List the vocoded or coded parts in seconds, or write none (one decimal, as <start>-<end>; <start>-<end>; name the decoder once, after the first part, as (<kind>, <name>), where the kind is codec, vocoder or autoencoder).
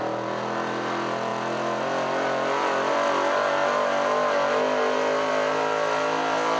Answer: none